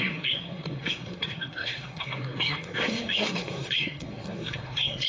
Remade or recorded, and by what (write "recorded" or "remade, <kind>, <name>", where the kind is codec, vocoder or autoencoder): remade, codec, SNAC